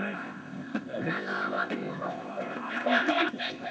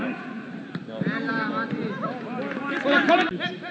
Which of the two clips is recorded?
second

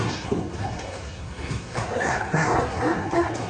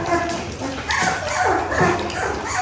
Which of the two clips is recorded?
second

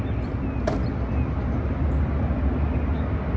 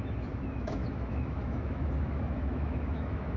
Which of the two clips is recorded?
first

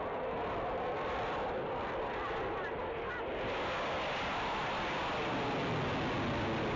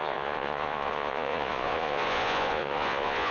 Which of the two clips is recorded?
first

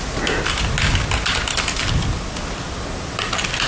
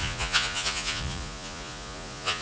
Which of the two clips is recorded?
first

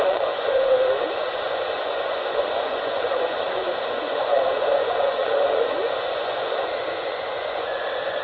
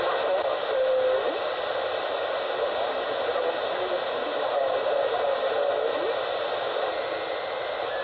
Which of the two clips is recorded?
second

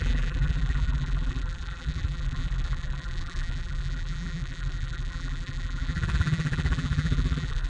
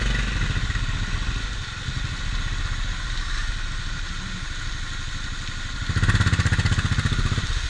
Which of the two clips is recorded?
second